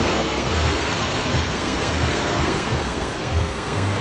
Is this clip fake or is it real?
fake